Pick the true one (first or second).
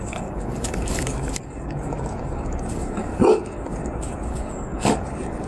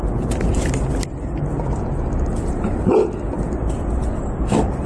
second